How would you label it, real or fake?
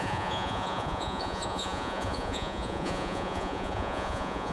fake